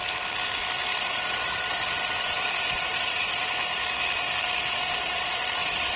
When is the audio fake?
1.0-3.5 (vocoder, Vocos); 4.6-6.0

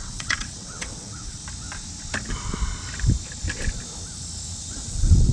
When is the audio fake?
0.0-1.4 (vocoder, WaveNeXt); 4.6-5.3

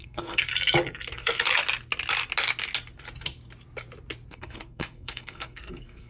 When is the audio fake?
0.0-0.5 (codec, SNAC); 1.1-1.5; 4.3-6.1

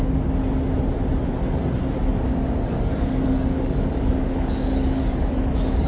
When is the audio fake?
2.3-5.9 (codec, DAC)

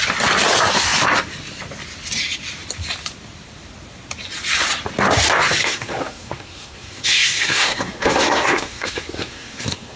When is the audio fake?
5.6-10.0 (codec, SNAC)